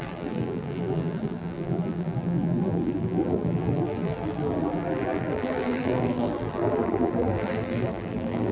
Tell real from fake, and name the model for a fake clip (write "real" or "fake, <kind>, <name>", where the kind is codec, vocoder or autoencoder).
fake, vocoder, BigVGAN v2